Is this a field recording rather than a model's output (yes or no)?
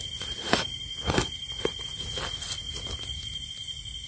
yes